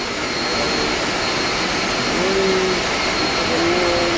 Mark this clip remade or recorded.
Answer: recorded